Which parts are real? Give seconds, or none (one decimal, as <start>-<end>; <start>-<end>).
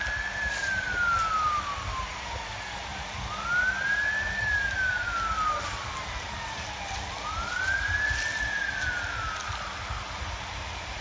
0.0-11.0